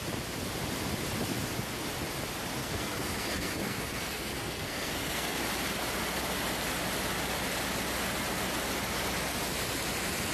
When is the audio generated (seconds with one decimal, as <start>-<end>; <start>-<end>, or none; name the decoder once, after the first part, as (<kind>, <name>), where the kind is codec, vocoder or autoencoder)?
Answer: 2.6-5.4 (codec, SNAC)